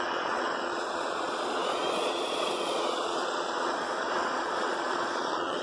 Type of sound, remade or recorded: remade